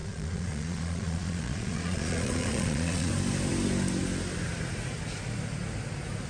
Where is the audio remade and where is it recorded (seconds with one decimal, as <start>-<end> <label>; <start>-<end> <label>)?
0.0-3.1 remade; 3.1-6.3 recorded